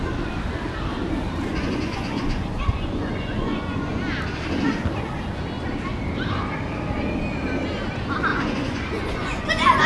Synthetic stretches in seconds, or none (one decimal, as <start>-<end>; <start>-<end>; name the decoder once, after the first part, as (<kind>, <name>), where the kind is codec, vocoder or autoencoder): 1.5-4.0 (vocoder, Vocos); 8.3-9.9